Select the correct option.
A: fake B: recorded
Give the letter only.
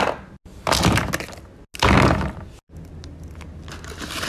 B